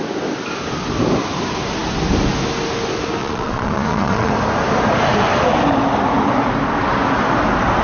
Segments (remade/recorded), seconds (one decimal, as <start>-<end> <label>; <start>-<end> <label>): 0.0-3.2 recorded; 3.2-4.3 remade; 4.3-7.8 recorded